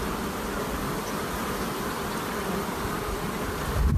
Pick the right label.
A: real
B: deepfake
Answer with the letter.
A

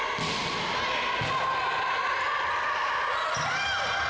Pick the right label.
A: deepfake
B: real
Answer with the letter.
B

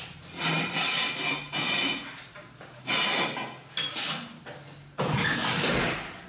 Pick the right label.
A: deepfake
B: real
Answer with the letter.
B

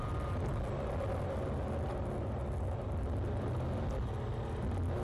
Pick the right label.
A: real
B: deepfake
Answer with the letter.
A